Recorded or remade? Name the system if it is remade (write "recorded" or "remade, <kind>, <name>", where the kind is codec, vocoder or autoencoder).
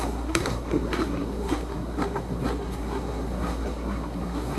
remade, codec, SNAC